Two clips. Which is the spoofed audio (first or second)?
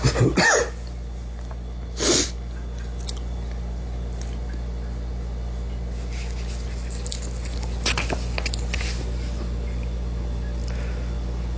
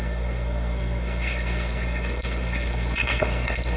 second